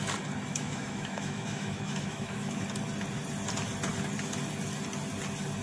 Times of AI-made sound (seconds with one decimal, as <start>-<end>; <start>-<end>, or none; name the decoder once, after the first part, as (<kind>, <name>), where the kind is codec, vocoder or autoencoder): 0.5-2.6 (autoencoder, DAC-VAE)